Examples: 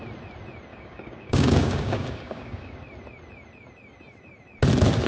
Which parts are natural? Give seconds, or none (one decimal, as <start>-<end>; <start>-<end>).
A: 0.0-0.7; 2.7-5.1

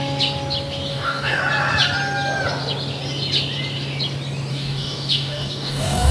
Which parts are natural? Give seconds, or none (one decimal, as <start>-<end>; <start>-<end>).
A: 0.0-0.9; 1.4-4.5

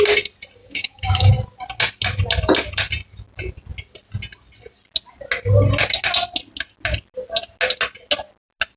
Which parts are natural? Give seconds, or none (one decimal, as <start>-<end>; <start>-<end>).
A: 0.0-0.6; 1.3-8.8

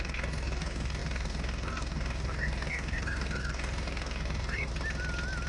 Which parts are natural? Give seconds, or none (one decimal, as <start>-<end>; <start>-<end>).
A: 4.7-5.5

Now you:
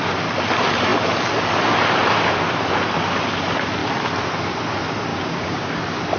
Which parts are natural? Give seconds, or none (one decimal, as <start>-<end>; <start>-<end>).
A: 0.0-5.1; 5.8-6.2

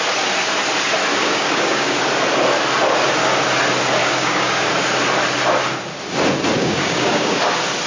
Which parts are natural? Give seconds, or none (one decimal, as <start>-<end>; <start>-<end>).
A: 0.0-1.1; 2.0-4.0; 4.7-6.6; 7.4-7.9

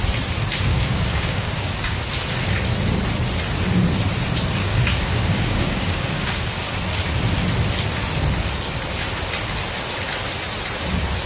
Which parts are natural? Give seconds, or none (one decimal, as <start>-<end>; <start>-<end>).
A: 0.0-0.7; 2.0-4.6; 6.5-11.3

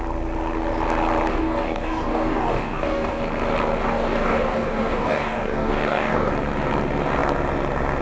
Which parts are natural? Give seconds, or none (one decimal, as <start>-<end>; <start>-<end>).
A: 0.0-1.3; 3.2-3.8; 6.3-8.0